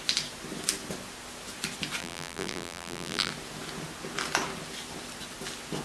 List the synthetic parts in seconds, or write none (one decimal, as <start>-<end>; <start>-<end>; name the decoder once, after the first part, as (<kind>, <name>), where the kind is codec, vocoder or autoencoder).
2.0-3.3 (vocoder, BigVGAN v2)